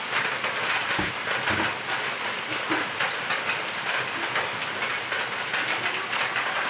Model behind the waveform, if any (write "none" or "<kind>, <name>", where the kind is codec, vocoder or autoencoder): none